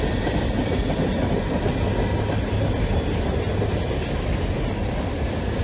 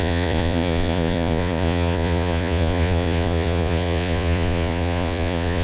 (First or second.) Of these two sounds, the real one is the first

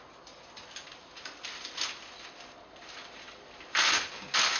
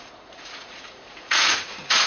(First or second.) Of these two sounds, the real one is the first